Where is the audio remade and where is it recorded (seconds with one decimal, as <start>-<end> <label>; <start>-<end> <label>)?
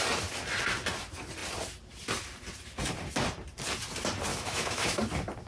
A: 0.0-4.3 recorded; 4.3-5.0 remade; 5.0-5.5 recorded